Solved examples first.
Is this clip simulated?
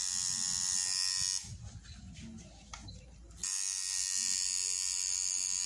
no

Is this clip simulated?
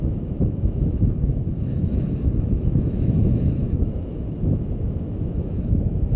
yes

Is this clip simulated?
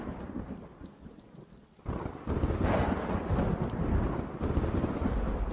no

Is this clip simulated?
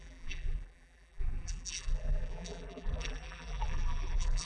yes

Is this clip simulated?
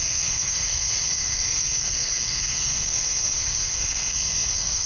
yes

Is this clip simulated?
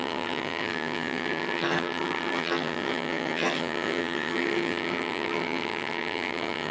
yes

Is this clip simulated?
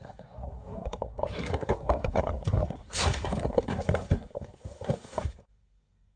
yes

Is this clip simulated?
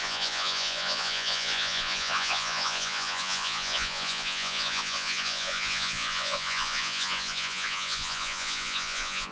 yes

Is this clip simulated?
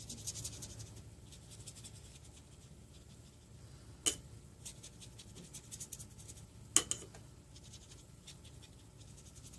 no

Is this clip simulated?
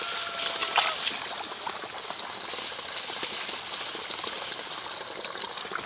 no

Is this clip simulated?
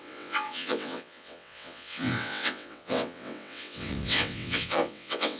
yes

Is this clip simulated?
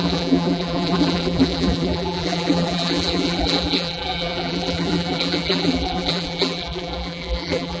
yes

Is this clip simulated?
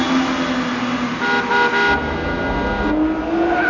no